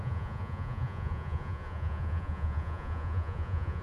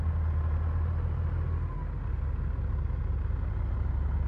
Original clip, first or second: second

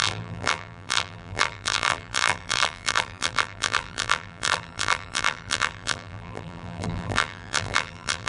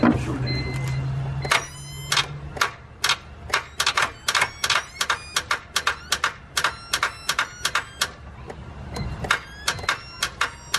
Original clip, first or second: second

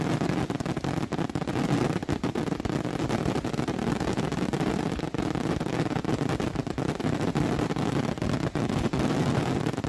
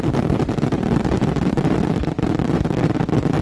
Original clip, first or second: first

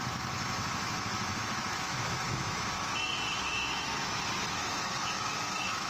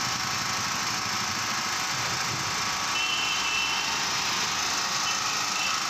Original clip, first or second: second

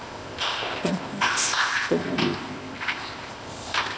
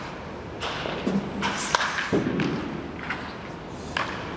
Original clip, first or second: second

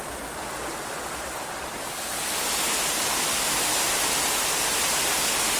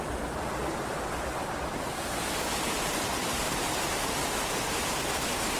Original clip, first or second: first